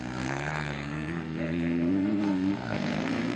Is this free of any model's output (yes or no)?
no